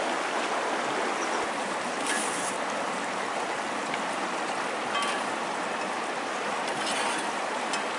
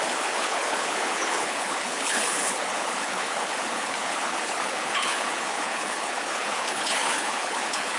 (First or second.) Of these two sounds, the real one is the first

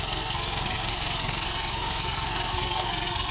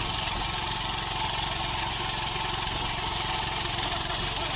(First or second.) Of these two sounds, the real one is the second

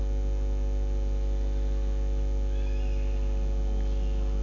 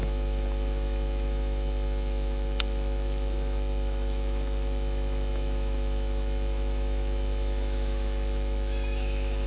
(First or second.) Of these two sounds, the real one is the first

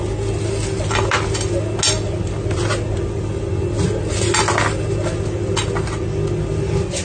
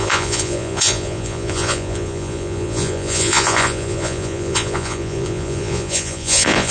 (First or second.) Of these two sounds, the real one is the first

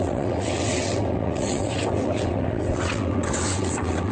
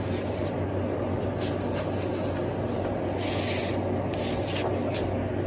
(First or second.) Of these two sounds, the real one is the second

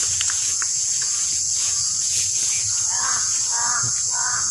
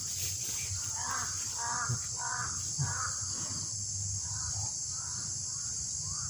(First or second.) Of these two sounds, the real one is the second